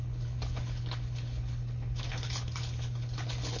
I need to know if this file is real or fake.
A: fake